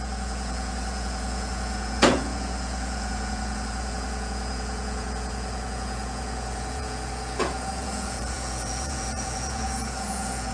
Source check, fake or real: fake